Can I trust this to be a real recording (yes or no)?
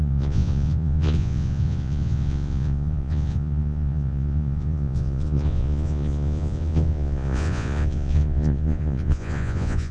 no